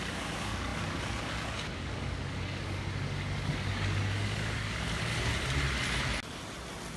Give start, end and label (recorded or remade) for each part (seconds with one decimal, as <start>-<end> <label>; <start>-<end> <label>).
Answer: 0.0-5.3 remade; 5.3-7.0 recorded